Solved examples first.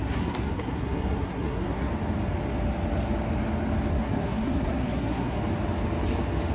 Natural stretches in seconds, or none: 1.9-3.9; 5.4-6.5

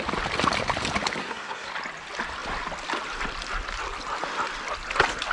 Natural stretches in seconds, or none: 0.0-1.2; 1.7-5.3

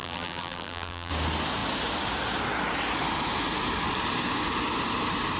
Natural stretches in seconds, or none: 1.1-5.4

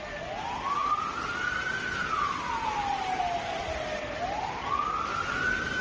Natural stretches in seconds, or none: 0.0-0.8; 1.6-3.6; 4.4-5.8

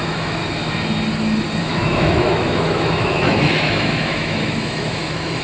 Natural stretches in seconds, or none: 0.4-1.6

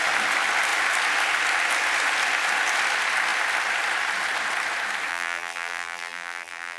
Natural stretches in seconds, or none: 0.0-5.1